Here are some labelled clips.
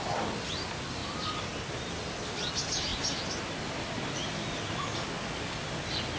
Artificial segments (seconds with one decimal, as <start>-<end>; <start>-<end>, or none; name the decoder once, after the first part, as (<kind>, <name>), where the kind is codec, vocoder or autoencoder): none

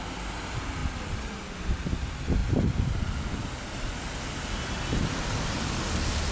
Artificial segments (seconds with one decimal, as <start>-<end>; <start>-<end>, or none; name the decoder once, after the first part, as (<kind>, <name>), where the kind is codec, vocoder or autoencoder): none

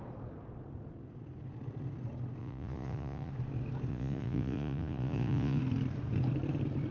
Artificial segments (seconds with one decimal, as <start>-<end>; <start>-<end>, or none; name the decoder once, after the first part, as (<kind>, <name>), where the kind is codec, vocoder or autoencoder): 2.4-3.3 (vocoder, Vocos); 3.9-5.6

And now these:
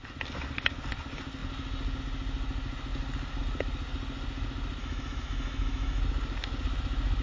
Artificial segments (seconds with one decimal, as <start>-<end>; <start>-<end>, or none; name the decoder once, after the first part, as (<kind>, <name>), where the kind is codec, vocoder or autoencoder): 4.8-6.0 (autoencoder, DAC-VAE)

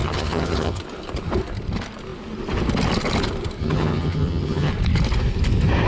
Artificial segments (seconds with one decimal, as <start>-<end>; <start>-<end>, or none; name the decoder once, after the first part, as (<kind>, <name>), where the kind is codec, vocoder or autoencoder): 0.0-0.8 (vocoder, HiFi-GAN); 3.6-4.7